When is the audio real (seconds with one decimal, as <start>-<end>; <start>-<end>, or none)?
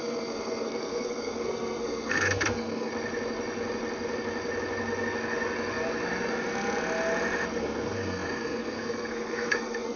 2.9-7.6